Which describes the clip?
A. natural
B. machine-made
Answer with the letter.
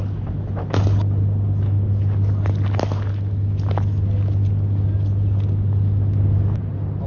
A